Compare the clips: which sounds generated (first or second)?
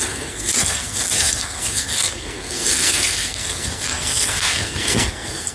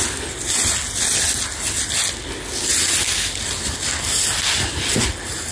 first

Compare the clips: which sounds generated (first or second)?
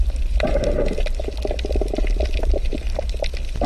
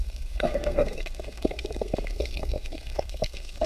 second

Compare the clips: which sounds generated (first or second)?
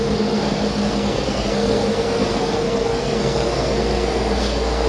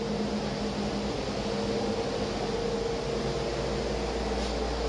first